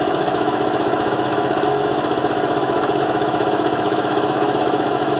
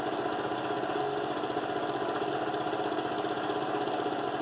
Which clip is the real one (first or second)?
second